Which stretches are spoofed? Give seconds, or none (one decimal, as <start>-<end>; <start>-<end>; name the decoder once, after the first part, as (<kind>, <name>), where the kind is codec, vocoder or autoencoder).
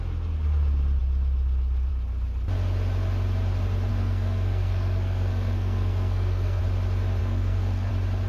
3.9-6.6 (codec, SNAC); 7.2-7.9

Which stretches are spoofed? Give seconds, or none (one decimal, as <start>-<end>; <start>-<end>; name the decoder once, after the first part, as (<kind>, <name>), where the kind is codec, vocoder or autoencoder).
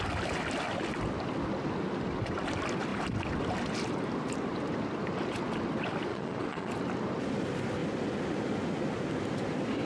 6.1-6.7 (vocoder, Vocos)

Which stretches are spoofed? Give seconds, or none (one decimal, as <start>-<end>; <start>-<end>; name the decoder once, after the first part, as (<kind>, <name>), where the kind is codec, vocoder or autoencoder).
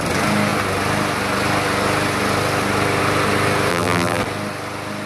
3.7-4.2 (vocoder, BigVGAN v2)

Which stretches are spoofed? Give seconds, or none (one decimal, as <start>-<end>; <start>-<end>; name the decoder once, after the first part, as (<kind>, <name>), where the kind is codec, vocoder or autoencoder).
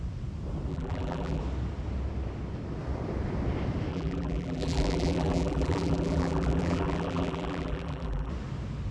0.7-1.4 (vocoder, BigVGAN v2); 3.9-8.3